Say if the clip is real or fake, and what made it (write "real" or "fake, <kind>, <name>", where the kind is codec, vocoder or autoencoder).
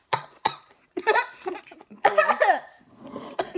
fake, vocoder, Vocos